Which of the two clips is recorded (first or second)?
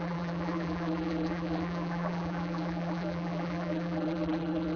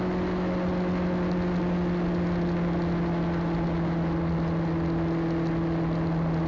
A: second